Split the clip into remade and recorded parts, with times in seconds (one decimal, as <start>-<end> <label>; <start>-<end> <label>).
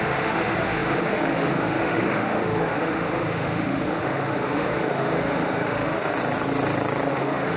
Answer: 0.0-6.1 remade; 6.1-7.1 recorded; 7.1-7.6 remade